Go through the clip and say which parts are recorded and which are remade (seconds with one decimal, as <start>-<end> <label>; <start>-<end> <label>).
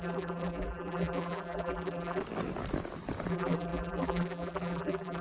0.0-2.2 remade; 2.2-3.3 recorded; 3.3-5.2 remade